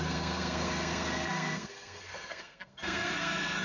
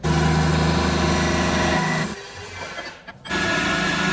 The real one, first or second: second